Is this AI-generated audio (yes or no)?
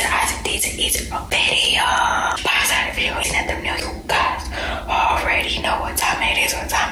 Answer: no